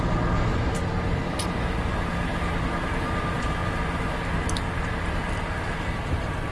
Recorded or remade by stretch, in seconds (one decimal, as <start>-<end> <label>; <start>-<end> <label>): 0.0-6.5 recorded